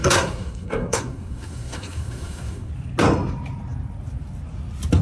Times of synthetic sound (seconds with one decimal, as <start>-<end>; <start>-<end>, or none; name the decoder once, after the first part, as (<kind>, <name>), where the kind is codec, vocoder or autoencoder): 0.0-2.7 (codec, SNAC)